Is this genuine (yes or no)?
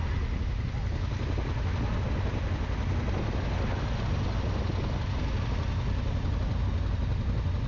yes